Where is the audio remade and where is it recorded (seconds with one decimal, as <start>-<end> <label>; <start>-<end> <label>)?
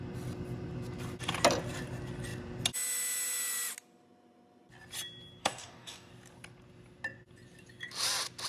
0.0-5.4 recorded; 5.4-6.1 remade; 6.1-8.5 recorded